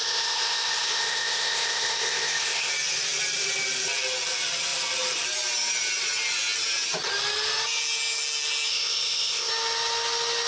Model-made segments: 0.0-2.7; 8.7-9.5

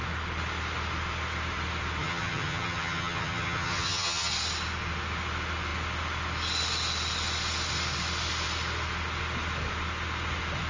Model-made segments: 2.0-4.3

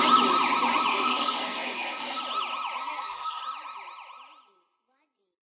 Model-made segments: 0.9-2.2; 2.8-3.4

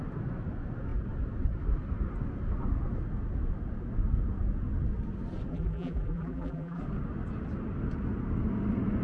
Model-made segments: 5.5-6.8

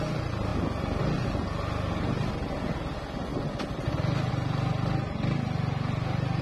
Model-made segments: none

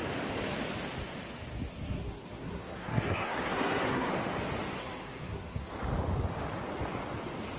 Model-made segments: 1.7-4.1; 4.8-5.7

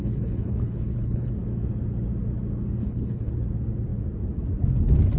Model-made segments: 0.0-1.3; 2.8-3.3

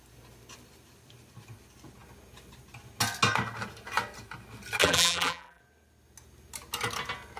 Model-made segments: 4.8-5.6